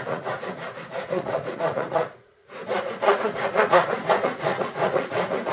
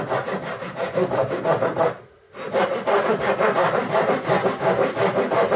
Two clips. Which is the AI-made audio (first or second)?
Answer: first